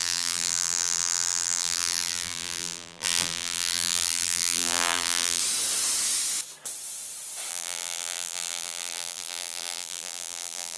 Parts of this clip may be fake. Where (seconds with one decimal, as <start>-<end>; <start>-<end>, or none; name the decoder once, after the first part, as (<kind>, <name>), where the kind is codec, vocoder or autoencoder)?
0.0-5.4 (vocoder, BigVGAN v2); 7.5-10.8